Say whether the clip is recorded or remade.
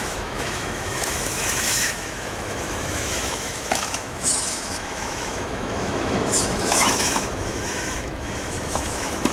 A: remade